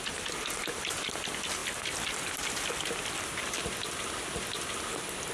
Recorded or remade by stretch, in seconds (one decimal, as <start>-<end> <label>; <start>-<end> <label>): 0.0-5.3 recorded